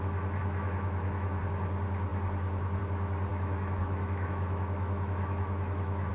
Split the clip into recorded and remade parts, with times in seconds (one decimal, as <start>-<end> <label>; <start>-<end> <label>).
0.0-0.4 recorded; 0.4-1.4 remade; 1.4-3.3 recorded; 3.3-6.1 remade